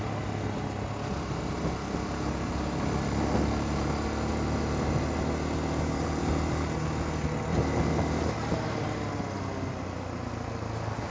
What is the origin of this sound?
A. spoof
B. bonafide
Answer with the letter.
B